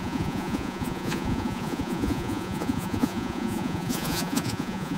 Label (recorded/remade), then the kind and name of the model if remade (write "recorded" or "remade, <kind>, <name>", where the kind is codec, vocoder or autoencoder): remade, vocoder, Vocos